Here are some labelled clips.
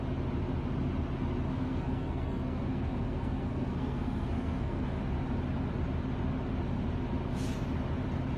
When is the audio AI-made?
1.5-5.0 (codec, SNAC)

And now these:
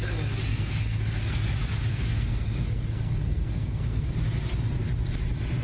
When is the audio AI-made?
0.5-1.5 (codec, SNAC); 1.9-4.1

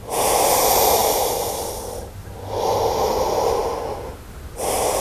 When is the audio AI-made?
none

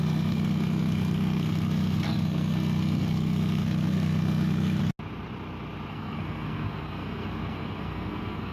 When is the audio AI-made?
0.0-4.8 (codec, SNAC); 5.9-8.5

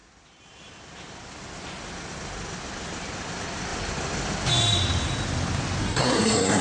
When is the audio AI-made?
5.8-6.6 (codec, SNAC)

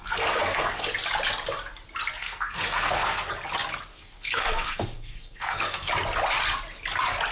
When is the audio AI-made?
0.0-0.8 (codec, SNAC); 2.2-3.3; 3.9-5.9